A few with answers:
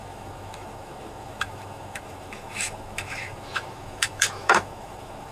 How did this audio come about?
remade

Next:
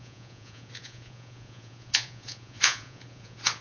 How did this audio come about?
remade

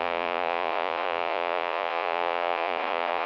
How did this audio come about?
remade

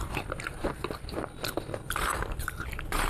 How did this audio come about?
recorded